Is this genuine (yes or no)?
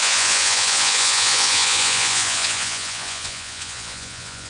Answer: no